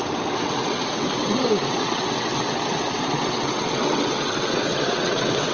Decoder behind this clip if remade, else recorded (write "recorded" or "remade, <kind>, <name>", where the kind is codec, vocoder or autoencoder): remade, vocoder, WaveNeXt